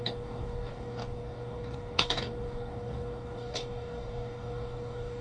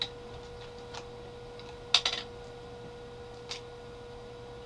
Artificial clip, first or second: first